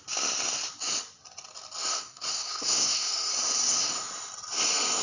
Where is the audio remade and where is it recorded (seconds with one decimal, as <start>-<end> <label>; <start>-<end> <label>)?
0.0-1.9 recorded; 1.9-3.3 remade; 3.3-5.0 recorded